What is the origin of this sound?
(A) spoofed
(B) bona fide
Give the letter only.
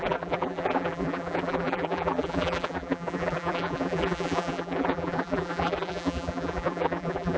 A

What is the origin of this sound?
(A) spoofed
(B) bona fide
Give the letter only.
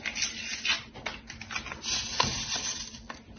B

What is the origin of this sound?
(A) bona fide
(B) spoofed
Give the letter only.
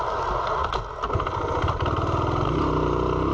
A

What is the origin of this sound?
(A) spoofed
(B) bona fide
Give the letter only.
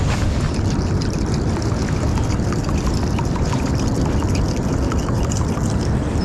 A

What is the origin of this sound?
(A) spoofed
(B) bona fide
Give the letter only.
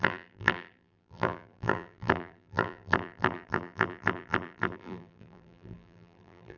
A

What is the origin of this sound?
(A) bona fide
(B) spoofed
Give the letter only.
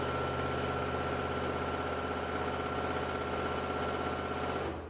A